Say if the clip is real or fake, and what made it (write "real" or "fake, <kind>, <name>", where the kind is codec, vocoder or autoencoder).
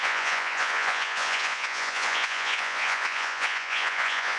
fake, vocoder, Vocos